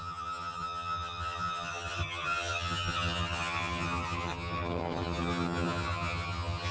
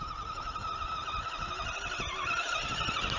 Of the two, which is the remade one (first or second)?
first